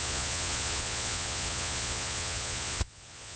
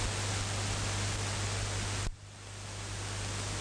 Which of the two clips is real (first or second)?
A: second